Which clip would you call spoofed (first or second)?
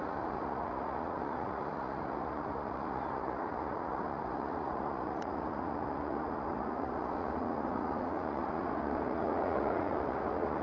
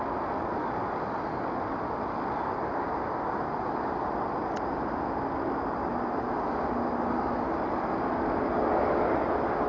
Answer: first